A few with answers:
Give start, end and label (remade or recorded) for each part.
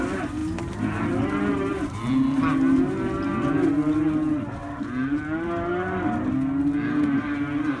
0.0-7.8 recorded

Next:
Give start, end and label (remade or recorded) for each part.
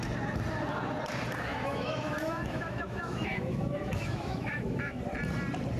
0.0-1.5 recorded; 1.5-5.0 remade; 5.0-5.8 recorded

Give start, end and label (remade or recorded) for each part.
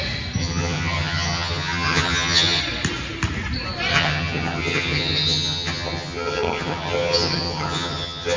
0.0-0.4 recorded; 0.4-2.6 remade; 2.6-3.9 recorded; 3.9-8.4 remade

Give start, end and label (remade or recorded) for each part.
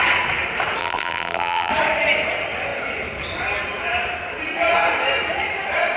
0.0-0.8 recorded; 0.8-1.7 remade; 1.7-6.0 recorded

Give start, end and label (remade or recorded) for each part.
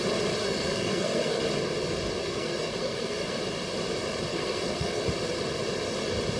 0.0-0.4 recorded; 0.4-1.4 remade; 1.4-2.2 recorded; 2.2-3.4 remade; 3.4-4.3 recorded; 4.3-5.0 remade; 5.0-6.4 recorded